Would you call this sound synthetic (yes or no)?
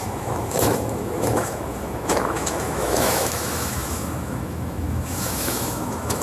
yes